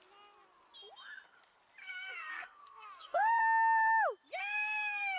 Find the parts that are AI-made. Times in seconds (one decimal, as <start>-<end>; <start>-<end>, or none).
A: 1.8-3.4; 4.4-5.2